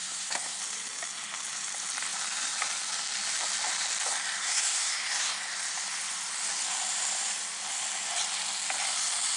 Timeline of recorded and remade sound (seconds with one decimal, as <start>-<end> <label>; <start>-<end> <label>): 0.0-0.6 remade; 0.6-4.4 recorded; 4.4-5.4 remade; 5.4-9.4 recorded